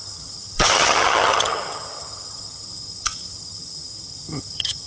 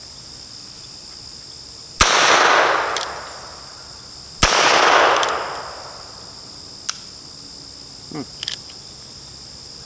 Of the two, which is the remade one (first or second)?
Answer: first